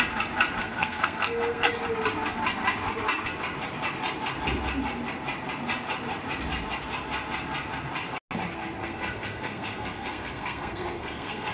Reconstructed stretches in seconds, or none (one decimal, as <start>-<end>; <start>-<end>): 0.6-1.8; 8.8-11.5